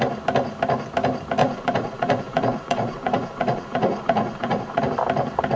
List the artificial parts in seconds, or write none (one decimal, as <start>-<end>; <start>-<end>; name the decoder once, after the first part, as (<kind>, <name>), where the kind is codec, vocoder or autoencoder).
1.4-4.8 (vocoder, Vocos)